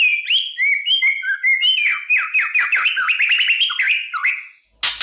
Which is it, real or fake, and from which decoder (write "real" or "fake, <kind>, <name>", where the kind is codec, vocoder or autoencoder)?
real